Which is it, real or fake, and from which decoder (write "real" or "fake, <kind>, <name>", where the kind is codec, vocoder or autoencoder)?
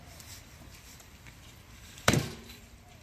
fake, vocoder, BigVGAN v2